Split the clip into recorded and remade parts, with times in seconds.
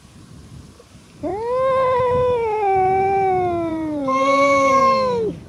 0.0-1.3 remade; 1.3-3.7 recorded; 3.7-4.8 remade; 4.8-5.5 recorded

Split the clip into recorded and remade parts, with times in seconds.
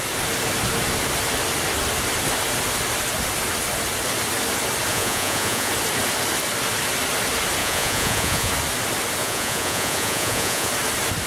0.0-4.9 recorded; 4.9-5.7 remade; 5.7-7.6 recorded; 7.6-8.5 remade; 8.5-9.2 recorded; 9.2-10.7 remade; 10.7-11.3 recorded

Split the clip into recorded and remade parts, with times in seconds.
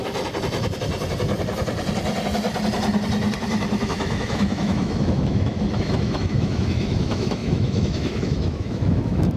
0.0-3.8 recorded; 3.8-9.4 remade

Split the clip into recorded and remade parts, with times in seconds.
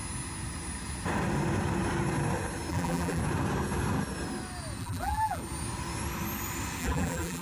0.0-2.7 recorded; 2.7-3.2 remade; 3.2-4.8 recorded; 4.8-5.4 remade; 5.4-6.8 recorded; 6.8-7.4 remade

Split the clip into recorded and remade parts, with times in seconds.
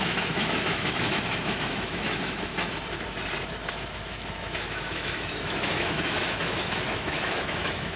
0.0-2.5 remade; 2.5-3.7 recorded; 3.7-8.0 remade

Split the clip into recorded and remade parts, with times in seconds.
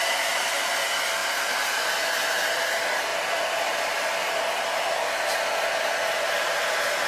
0.0-7.1 recorded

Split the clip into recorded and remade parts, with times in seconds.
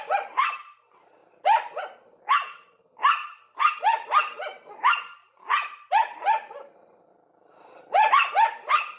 0.0-9.0 recorded